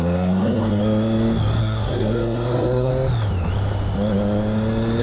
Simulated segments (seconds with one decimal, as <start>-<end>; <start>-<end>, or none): 0.0-0.8; 1.6-2.9